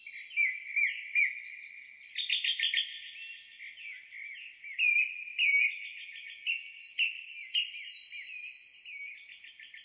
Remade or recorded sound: recorded